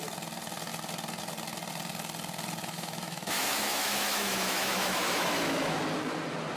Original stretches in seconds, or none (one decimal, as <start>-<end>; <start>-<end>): 0.0-2.6; 5.8-6.6